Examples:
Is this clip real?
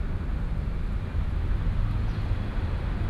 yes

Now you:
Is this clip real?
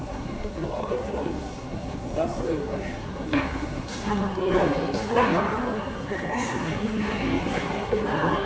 no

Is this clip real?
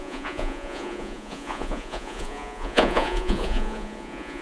no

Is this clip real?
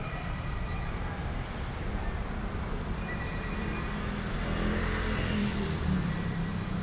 no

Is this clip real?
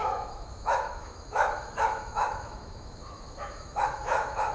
no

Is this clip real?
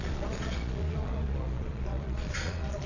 no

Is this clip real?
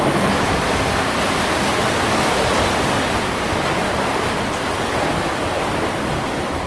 yes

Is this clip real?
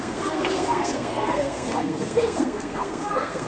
no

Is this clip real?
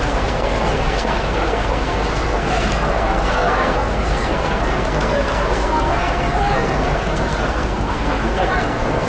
no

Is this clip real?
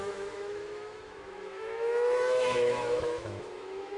no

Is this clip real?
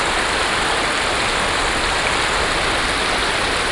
yes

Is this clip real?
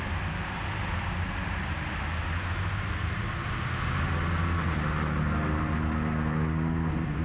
yes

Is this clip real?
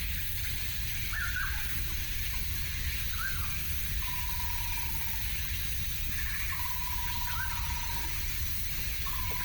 no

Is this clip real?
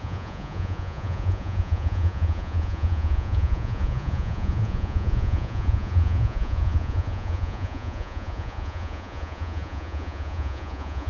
no